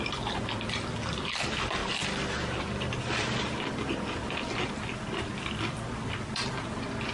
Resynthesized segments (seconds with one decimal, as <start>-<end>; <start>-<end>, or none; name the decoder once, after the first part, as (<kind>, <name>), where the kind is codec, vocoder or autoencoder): none